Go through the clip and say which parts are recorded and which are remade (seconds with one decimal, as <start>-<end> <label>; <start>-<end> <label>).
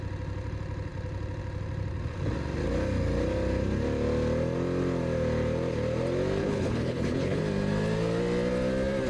0.0-6.4 recorded; 6.4-7.4 remade; 7.4-9.1 recorded